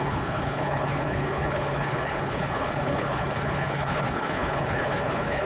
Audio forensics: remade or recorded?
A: remade